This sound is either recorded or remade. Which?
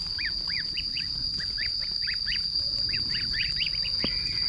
recorded